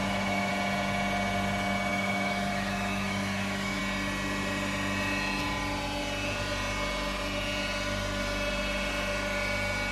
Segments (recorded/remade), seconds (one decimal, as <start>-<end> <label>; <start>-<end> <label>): 0.0-0.5 remade; 0.5-1.9 recorded; 1.9-3.8 remade; 3.8-9.9 recorded